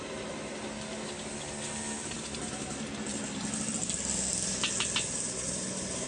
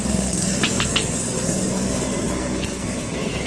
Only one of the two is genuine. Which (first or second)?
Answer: first